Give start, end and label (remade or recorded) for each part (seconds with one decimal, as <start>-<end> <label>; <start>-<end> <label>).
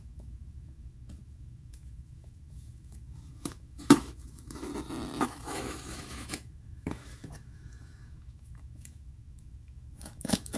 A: 0.0-4.7 remade; 4.7-5.2 recorded; 5.2-10.6 remade